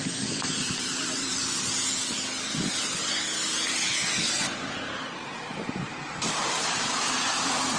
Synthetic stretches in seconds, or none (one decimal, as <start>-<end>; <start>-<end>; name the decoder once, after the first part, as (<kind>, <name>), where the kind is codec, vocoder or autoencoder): 0.6-1.4 (vocoder, BigVGAN v2); 4.9-7.8